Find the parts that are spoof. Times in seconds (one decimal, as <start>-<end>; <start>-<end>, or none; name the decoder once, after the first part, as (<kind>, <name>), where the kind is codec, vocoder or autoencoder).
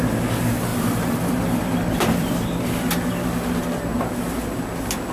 0.7-3.8 (vocoder, BigVGAN v2)